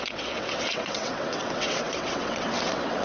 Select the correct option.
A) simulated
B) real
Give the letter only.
A